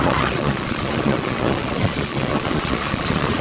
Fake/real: fake